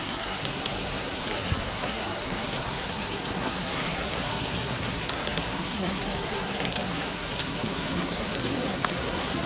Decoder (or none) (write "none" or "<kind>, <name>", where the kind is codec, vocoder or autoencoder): codec, SNAC